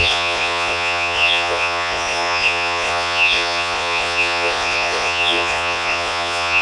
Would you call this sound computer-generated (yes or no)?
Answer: yes